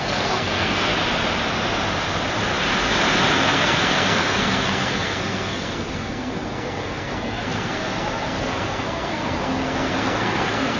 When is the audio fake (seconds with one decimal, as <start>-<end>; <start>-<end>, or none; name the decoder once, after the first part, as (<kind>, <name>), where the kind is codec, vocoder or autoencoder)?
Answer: 0.0-0.9 (codec, SNAC); 3.3-10.8